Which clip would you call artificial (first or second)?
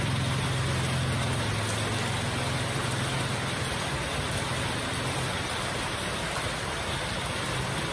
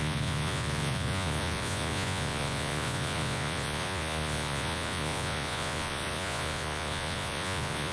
second